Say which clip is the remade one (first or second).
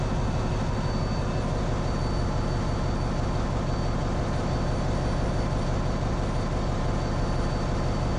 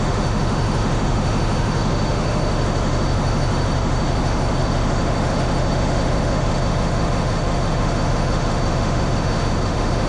second